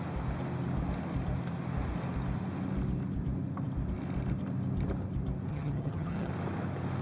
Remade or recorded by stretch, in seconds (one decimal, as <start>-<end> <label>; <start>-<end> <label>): 0.0-5.5 recorded; 5.5-6.3 remade; 6.3-7.0 recorded